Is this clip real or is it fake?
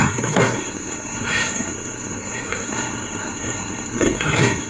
fake